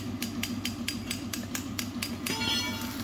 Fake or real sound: real